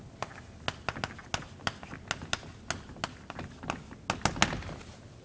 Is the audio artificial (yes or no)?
no